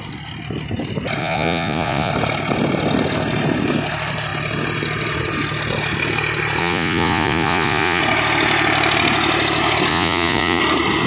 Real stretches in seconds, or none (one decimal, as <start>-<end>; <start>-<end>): 0.0-1.2; 2.1-6.6; 8.0-9.9; 10.6-11.1